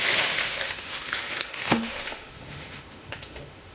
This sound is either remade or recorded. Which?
remade